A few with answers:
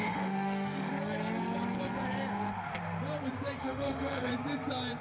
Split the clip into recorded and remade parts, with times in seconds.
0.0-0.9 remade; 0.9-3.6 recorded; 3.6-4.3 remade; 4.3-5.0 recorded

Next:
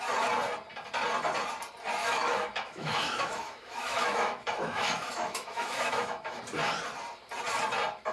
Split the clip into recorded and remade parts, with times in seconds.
0.0-2.0 recorded; 2.0-6.4 remade; 6.4-8.1 recorded

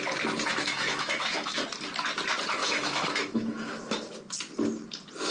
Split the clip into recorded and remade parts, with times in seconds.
0.0-0.5 recorded; 0.5-1.6 remade; 1.6-2.6 recorded; 2.6-3.8 remade; 3.8-5.3 recorded

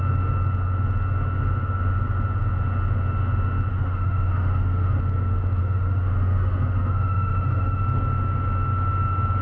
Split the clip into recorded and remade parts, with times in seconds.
0.0-3.7 recorded; 3.7-5.0 remade; 5.0-5.6 recorded; 5.6-7.8 remade; 7.8-9.4 recorded

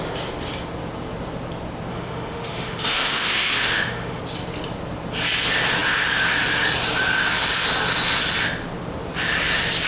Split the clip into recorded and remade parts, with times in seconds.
0.0-1.9 recorded; 1.9-4.2 remade; 4.2-9.9 recorded

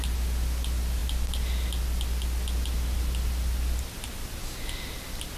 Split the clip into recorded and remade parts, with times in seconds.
0.0-5.4 recorded